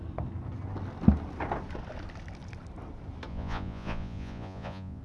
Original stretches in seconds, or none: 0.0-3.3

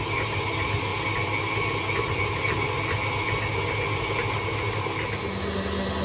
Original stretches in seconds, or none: 0.0-6.0